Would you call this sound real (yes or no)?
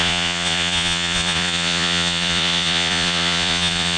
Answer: no